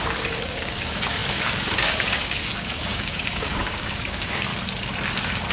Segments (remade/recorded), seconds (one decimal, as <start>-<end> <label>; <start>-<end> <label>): 0.0-4.5 remade; 4.5-5.5 recorded